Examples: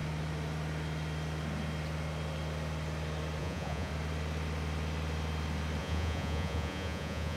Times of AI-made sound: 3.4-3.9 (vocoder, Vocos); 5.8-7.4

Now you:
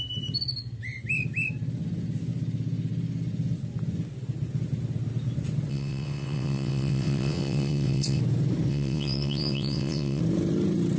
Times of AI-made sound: 5.7-8.2 (vocoder, WaveNeXt); 8.7-10.2